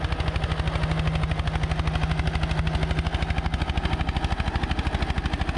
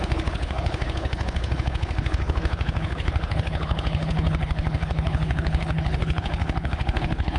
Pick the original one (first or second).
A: first